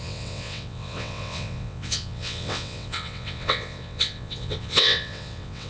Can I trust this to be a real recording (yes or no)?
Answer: no